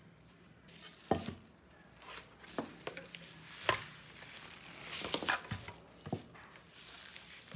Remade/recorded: recorded